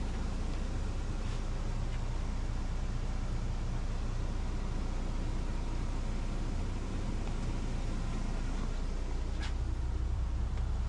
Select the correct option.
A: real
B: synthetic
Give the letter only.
A